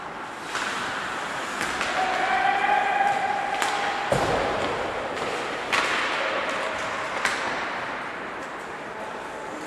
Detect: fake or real real